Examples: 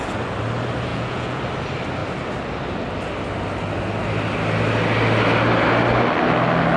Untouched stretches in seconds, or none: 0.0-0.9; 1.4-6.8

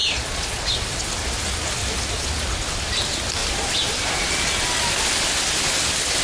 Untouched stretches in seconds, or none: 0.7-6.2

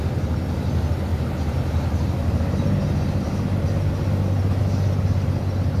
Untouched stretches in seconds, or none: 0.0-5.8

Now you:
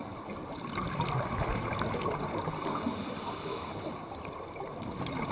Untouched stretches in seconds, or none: 0.0-5.3

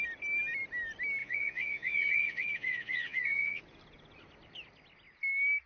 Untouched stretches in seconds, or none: 0.0-1.2; 3.6-5.7

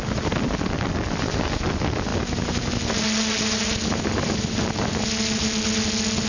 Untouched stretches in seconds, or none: 0.0-6.3

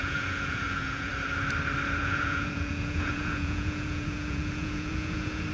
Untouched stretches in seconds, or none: 1.1-2.0

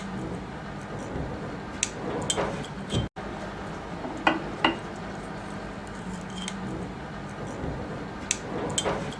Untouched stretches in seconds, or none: 0.0-9.2